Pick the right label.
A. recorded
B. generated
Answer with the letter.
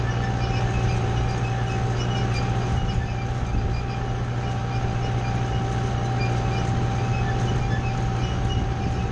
A